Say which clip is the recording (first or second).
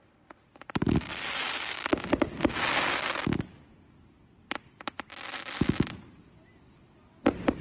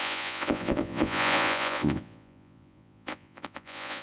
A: first